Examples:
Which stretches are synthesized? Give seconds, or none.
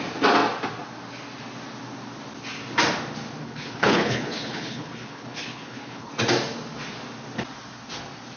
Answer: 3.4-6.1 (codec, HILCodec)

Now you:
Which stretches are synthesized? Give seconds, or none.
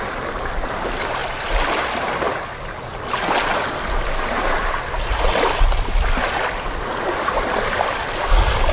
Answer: none